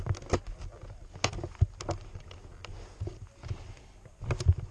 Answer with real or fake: real